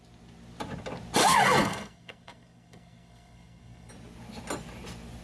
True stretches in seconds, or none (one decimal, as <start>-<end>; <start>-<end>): 0.0-1.2; 3.9-5.2